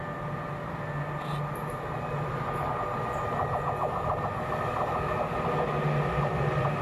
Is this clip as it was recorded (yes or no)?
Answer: yes